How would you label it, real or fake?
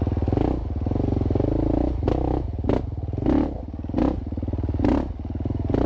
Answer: real